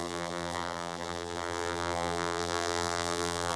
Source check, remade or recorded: remade